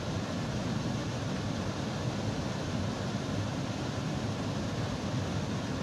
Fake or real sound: fake